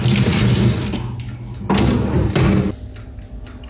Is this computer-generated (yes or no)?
no